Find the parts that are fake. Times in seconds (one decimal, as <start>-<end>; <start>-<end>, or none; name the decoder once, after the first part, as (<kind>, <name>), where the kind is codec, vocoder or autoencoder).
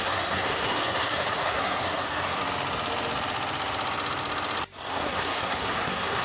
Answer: 0.0-2.4 (codec, SNAC); 4.9-6.2